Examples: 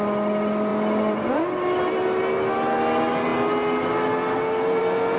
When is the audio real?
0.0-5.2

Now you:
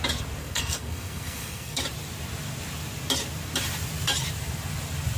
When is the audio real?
0.0-0.4; 1.8-5.2

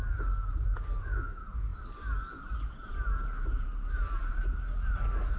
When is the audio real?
0.0-5.4